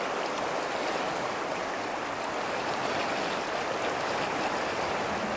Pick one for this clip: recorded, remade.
recorded